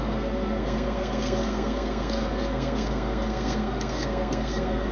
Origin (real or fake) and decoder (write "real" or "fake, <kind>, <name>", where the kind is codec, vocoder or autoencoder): fake, codec, SNAC